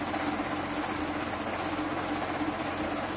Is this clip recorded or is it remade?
recorded